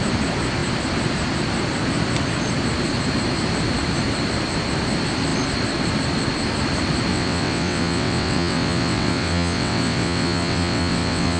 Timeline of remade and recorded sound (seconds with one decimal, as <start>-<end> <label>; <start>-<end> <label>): 0.0-7.1 recorded; 7.1-11.4 remade